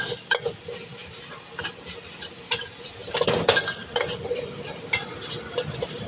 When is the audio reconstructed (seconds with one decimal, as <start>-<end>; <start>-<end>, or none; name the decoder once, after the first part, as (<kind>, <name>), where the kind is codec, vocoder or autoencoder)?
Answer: none